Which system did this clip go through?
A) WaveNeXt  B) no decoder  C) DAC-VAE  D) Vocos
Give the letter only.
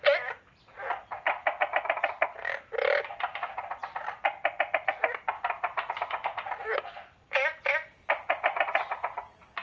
B